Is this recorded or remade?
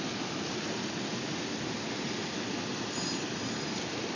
recorded